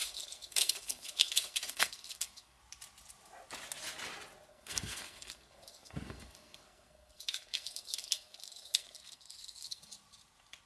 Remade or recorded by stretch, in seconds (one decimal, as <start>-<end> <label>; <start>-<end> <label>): 0.0-2.6 remade; 2.6-4.5 recorded; 4.5-9.8 remade; 9.8-10.7 recorded

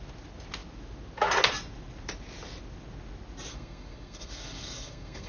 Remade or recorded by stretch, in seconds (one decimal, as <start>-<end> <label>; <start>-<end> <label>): 0.0-3.5 recorded; 3.5-5.3 remade

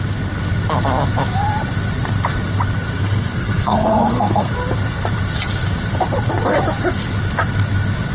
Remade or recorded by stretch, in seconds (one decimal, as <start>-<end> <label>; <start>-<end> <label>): 0.0-3.0 recorded; 3.0-4.5 remade; 4.5-8.1 recorded

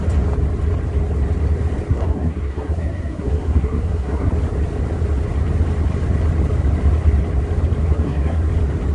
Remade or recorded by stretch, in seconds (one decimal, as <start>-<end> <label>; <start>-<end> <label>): 0.0-1.9 recorded; 1.9-4.3 remade; 4.3-7.8 recorded; 7.8-8.5 remade; 8.5-8.9 recorded

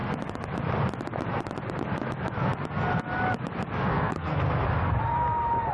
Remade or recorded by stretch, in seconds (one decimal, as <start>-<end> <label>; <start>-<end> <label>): 0.0-3.9 recorded; 3.9-4.4 remade; 4.4-5.7 recorded

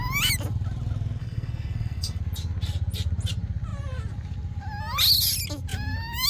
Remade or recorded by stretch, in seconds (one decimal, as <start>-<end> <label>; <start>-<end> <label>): 0.0-1.2 recorded; 1.2-2.2 remade; 2.2-6.3 recorded